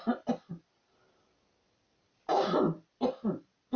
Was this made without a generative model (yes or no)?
yes